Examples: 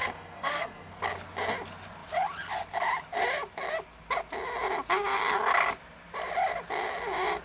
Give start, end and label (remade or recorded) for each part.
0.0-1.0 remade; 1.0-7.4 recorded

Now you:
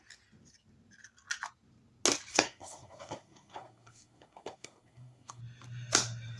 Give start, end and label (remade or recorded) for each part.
0.0-2.3 recorded; 2.3-5.4 remade; 5.4-6.4 recorded

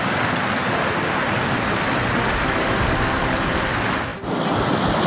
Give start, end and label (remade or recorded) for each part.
0.0-5.1 recorded